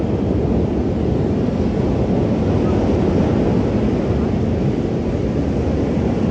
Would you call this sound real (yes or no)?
yes